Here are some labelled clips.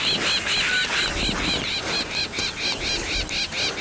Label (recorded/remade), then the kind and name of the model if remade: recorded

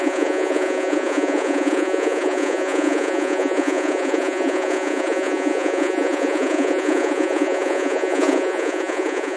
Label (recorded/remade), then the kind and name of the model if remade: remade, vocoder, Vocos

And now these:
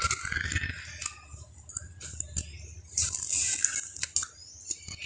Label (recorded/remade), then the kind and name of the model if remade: recorded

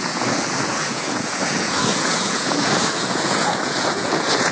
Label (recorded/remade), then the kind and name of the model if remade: remade, vocoder, Vocos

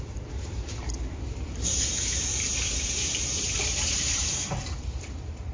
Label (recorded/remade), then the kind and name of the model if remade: remade, vocoder, BigVGAN v2